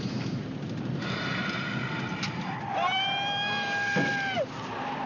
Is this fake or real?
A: real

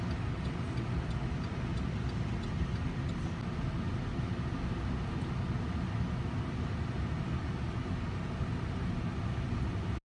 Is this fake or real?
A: real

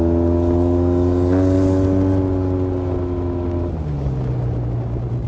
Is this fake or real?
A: real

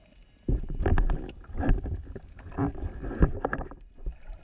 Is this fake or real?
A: real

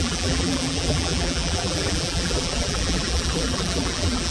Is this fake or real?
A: fake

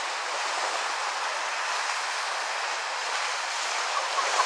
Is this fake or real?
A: real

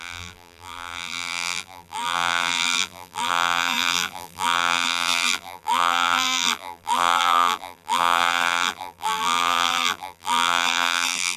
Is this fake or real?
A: fake